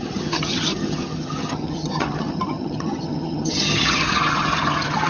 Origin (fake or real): fake